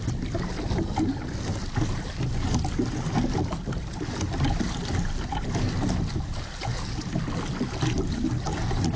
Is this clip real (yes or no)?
yes